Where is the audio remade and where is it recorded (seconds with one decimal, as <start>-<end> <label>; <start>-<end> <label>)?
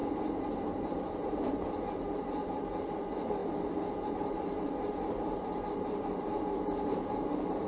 0.0-0.9 recorded; 0.9-3.4 remade; 3.4-4.1 recorded; 4.1-7.7 remade